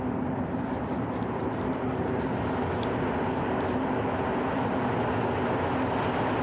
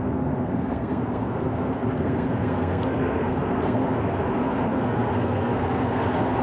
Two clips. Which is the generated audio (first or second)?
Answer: second